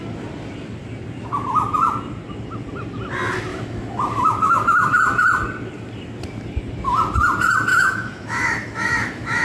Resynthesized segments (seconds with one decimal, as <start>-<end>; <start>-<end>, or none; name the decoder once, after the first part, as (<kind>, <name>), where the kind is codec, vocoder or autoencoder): 3.5-5.0 (autoencoder, DAC-VAE); 7.7-9.4

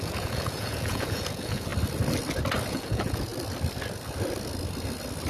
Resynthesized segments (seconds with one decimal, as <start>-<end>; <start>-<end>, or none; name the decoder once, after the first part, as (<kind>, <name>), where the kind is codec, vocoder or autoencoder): 0.0-1.7 (vocoder, Vocos); 2.7-3.3

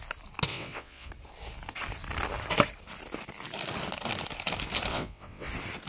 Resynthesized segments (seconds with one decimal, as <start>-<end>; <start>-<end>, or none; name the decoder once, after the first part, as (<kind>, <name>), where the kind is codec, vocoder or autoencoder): 0.5-1.1 (vocoder, WaveNeXt); 4.9-5.5

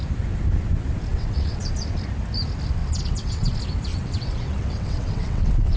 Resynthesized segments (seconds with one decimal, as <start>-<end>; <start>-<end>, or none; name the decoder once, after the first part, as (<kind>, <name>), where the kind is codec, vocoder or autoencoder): 1.1-1.7 (vocoder, WaveNeXt); 2.8-3.5; 3.9-5.8